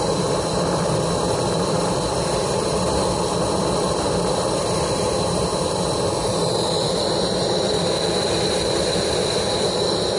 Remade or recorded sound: remade